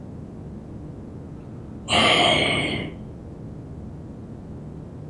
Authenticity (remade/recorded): recorded